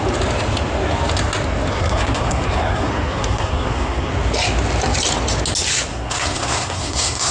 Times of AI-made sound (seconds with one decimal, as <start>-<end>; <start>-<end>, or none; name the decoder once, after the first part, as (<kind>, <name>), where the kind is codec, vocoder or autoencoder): 1.7-4.1 (codec, SNAC); 5.9-7.3